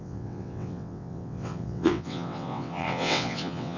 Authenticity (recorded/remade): remade